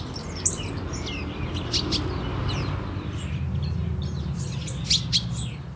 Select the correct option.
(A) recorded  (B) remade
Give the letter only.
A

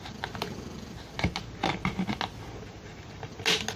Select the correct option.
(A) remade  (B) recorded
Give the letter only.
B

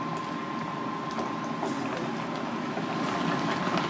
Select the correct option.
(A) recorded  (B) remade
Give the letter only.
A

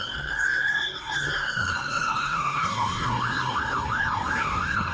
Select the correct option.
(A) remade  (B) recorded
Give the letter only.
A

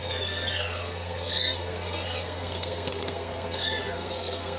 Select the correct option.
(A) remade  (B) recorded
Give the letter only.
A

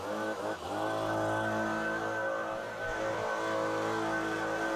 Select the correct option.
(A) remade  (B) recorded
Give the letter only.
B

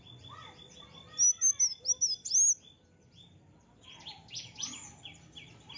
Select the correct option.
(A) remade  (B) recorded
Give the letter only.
B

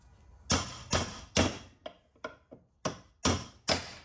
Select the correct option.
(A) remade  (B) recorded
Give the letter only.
B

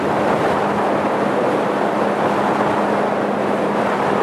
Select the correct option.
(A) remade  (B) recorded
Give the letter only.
B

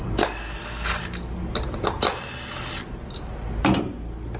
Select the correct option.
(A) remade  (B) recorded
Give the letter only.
B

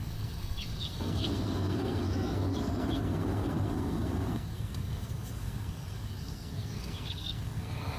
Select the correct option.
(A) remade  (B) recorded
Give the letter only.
A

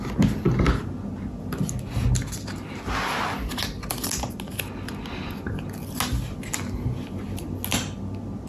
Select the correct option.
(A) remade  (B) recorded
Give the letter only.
B